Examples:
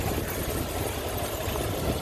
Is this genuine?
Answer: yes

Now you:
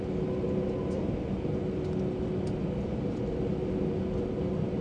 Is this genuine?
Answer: yes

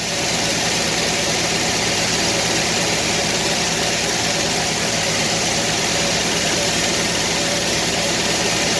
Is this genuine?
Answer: no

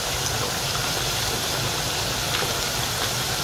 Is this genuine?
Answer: no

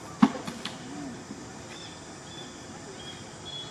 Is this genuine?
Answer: yes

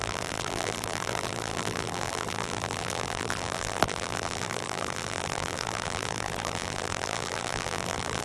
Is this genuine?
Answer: no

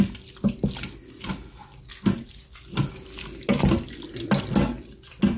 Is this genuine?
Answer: yes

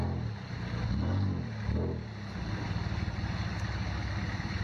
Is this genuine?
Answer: yes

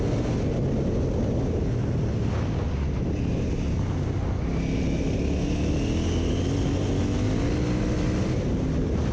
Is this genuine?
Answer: yes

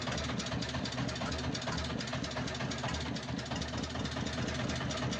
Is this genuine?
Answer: yes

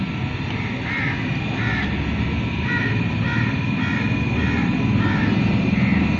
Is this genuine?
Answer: yes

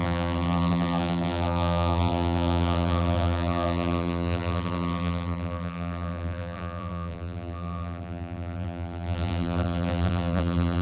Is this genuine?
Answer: no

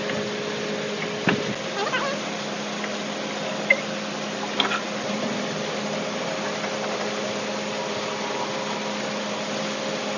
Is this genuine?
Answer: yes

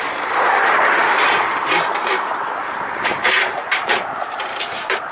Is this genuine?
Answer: no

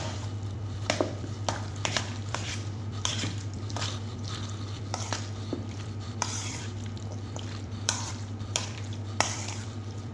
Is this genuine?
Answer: no